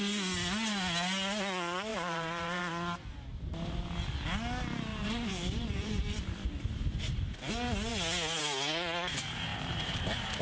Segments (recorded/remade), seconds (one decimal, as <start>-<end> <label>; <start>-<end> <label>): 0.0-1.9 recorded; 1.9-2.6 remade; 2.6-4.9 recorded; 4.9-7.5 remade; 7.5-9.5 recorded; 9.5-10.4 remade